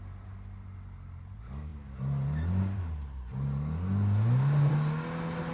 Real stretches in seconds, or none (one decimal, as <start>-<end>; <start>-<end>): 0.0-5.5